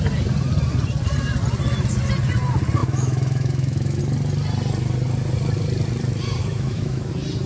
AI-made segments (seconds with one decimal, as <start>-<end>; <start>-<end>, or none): 2.8-4.0; 6.4-7.1

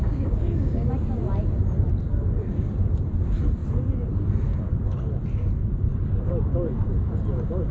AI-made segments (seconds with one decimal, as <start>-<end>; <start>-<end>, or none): 0.0-0.9